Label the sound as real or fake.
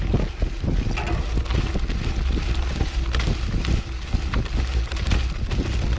real